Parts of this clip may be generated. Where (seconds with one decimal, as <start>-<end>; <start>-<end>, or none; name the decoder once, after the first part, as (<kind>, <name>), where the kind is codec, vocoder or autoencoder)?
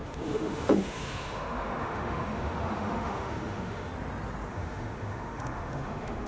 0.0-3.9 (autoencoder, DAC-VAE); 4.5-6.3